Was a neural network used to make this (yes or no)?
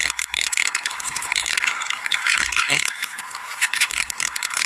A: yes